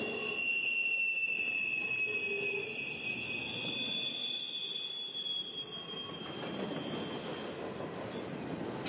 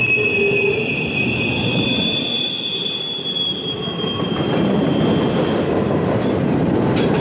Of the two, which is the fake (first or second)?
second